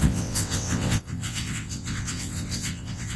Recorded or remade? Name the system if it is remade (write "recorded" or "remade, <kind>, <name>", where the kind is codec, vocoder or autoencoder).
remade, vocoder, WaveNeXt